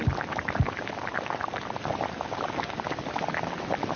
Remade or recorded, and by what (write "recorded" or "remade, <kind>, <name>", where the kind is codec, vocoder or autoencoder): recorded